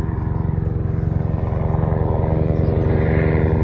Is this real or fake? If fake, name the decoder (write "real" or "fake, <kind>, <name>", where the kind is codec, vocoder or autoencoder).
fake, vocoder, BigVGAN v2